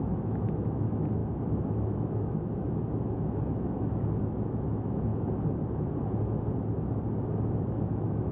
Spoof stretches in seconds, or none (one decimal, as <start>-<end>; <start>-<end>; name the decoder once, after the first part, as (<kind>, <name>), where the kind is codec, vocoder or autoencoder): 0.0-1.2 (autoencoder, DAC-VAE); 1.7-5.1; 7.6-8.3